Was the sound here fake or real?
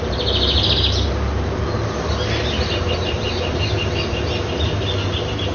real